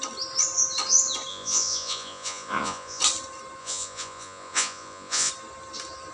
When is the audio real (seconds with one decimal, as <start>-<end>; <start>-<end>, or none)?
0.0-1.3; 3.0-3.6; 5.3-6.1